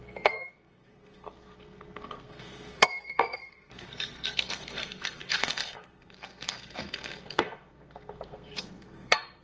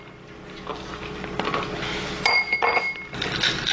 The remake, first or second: first